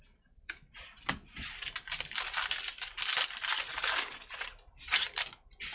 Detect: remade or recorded remade